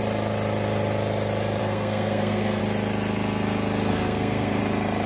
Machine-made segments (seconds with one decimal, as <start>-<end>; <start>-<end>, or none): 1.6-2.6; 3.9-4.6